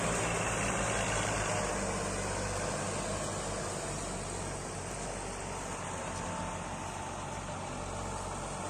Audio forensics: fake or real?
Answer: real